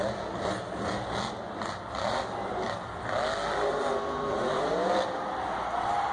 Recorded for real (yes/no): yes